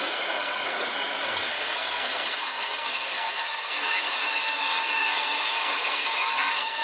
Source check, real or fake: fake